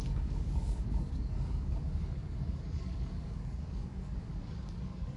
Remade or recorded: remade